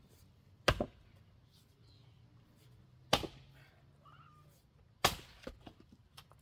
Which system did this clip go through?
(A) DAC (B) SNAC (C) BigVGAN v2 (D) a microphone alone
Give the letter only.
D